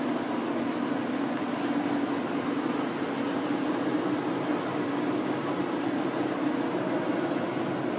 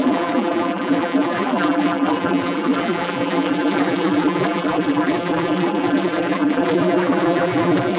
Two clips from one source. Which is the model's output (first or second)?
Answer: second